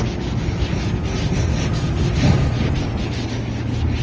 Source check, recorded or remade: recorded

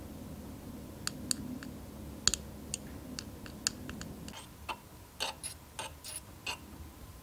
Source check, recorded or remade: recorded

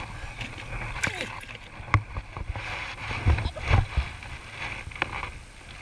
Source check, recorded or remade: recorded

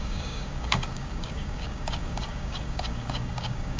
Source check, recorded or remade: remade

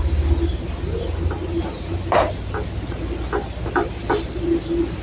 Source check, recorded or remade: recorded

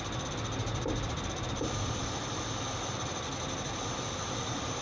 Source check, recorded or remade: recorded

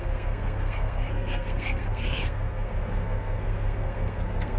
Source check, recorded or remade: remade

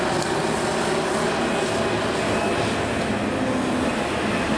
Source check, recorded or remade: recorded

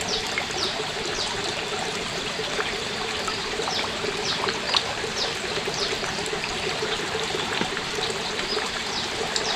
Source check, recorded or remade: remade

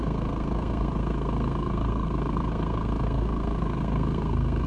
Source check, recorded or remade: remade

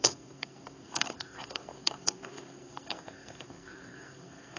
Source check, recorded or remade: remade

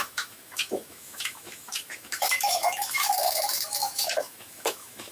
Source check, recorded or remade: remade